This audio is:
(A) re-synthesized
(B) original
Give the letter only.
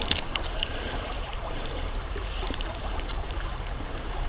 A